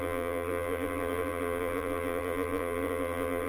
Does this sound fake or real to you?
fake